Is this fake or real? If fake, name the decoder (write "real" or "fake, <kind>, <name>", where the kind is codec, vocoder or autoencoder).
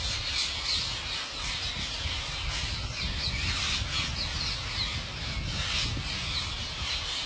real